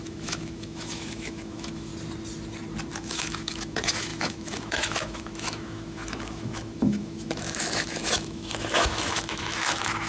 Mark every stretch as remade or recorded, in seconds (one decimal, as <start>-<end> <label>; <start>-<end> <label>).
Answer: 0.0-1.9 remade; 1.9-2.9 recorded; 2.9-10.1 remade